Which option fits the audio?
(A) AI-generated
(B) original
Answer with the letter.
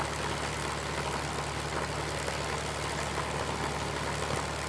B